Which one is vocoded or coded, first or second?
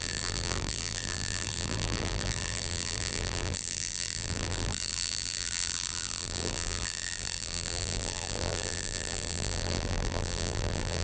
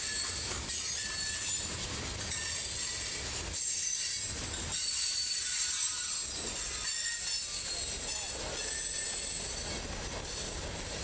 first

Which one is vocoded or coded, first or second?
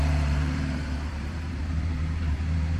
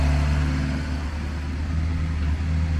first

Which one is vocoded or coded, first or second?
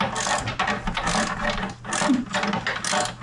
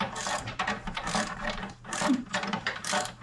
second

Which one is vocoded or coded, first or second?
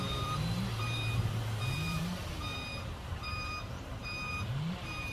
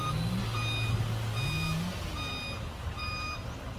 first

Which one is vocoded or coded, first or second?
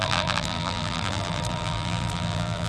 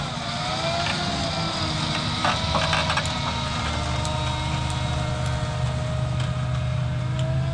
first